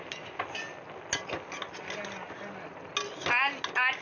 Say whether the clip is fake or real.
real